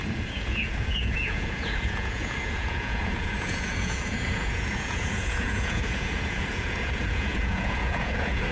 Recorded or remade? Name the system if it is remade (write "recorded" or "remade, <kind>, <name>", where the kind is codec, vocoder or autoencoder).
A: remade, vocoder, Vocos